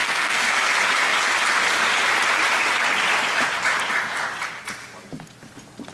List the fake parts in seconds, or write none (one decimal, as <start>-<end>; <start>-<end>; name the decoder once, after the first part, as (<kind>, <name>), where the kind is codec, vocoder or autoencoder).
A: 0.0-0.7 (codec, SNAC)